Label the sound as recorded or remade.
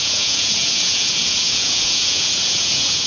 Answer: remade